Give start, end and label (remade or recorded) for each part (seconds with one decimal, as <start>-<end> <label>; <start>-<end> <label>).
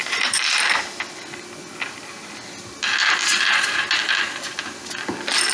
0.0-0.5 remade; 0.5-3.3 recorded; 3.3-3.9 remade; 3.9-5.5 recorded